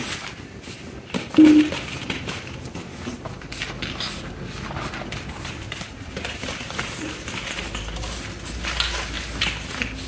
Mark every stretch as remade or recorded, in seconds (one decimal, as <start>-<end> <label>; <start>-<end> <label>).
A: 0.0-10.1 recorded